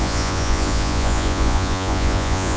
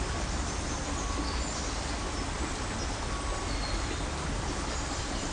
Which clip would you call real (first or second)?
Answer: second